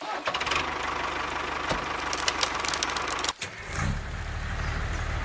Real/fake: real